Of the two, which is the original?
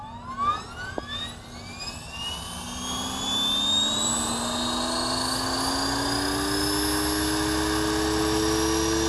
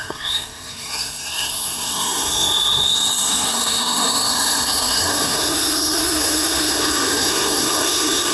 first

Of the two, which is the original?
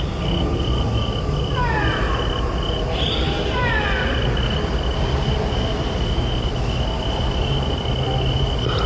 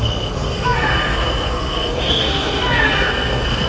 first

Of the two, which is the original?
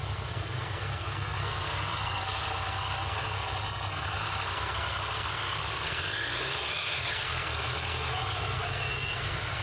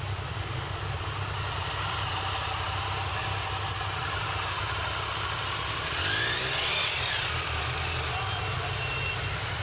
second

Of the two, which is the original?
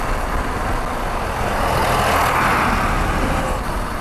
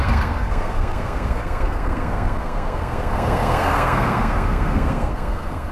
first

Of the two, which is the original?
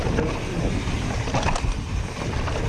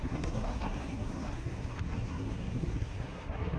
first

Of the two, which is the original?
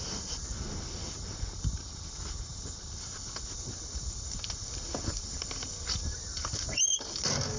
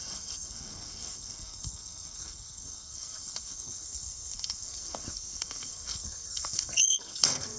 first